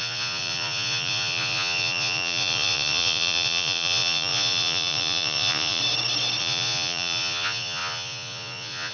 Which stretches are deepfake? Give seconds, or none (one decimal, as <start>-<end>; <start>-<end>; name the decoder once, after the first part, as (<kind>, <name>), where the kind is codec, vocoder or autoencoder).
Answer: 0.0-5.8 (vocoder, Vocos); 6.4-8.9